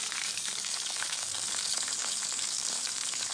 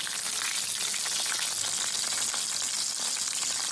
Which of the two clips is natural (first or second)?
second